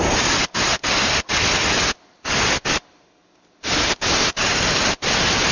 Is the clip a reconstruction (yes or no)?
no